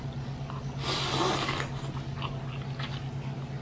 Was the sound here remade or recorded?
recorded